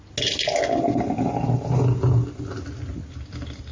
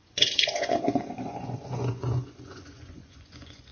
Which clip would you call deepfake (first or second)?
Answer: second